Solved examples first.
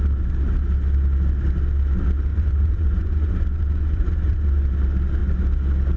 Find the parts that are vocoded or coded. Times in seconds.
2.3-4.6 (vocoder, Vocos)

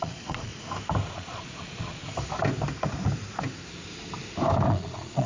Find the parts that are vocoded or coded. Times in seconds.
0.0-0.5 (vocoder, Vocos); 1.1-2.0; 4.7-5.3

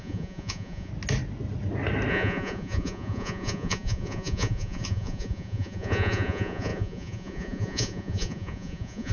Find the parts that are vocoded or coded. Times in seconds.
0.0-0.9 (vocoder, Vocos); 2.1-9.1

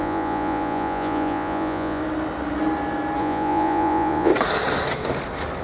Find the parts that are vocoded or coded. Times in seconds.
0.0-2.0 (vocoder, Vocos); 3.2-4.3